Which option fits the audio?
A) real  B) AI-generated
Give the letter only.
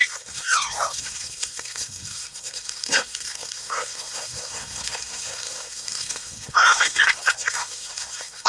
B